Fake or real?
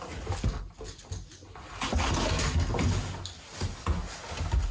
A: real